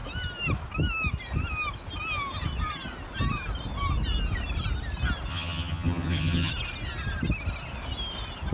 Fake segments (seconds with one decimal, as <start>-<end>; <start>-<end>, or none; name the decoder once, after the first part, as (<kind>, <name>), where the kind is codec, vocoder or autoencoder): 5.3-6.5 (vocoder, HiFi-GAN)